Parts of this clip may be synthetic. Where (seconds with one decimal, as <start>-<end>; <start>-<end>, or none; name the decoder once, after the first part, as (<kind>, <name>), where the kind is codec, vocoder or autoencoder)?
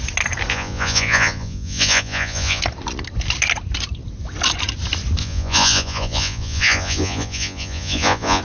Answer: 0.5-2.6 (vocoder, Vocos); 5.2-8.4